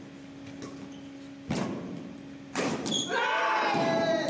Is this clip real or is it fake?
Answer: real